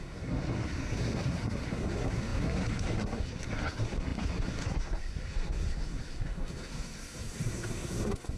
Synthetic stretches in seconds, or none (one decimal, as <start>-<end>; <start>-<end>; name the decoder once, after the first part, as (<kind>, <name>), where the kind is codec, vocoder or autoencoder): 0.0-8.4 (codec, SNAC)